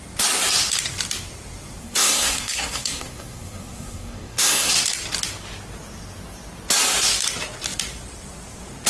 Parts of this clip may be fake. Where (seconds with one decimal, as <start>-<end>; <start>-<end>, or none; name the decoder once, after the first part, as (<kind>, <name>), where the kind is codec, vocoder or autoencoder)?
1.8-4.7 (codec, SNAC)